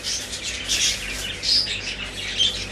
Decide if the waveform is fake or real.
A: real